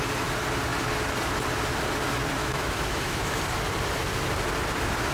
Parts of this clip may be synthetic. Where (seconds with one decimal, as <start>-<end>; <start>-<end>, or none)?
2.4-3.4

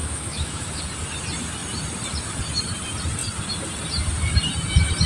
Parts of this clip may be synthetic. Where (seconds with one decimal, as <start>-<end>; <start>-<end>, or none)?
0.0-0.8

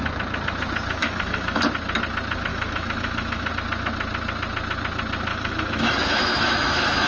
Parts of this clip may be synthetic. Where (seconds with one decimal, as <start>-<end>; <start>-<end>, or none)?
1.0-1.6; 2.5-3.5; 5.3-7.1

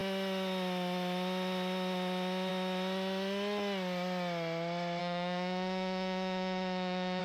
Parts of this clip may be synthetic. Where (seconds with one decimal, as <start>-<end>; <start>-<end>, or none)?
5.0-7.2